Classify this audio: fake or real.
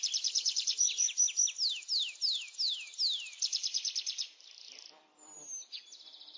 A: real